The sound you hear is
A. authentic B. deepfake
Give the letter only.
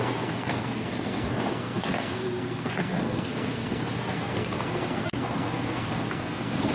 B